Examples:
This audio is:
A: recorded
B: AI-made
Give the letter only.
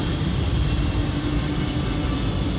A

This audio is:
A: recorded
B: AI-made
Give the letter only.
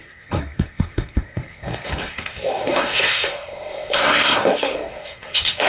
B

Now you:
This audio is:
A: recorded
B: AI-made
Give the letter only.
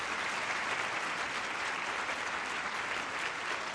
A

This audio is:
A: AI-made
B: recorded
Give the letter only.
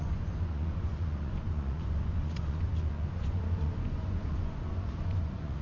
A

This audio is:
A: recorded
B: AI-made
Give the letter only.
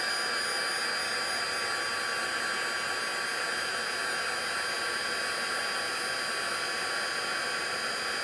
A